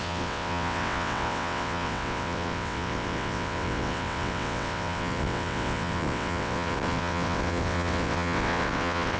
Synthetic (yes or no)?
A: yes